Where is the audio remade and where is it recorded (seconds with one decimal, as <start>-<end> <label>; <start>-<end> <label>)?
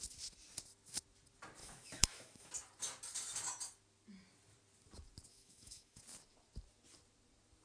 0.0-1.6 recorded; 1.6-2.5 remade; 2.5-5.3 recorded; 5.3-6.0 remade; 6.0-7.6 recorded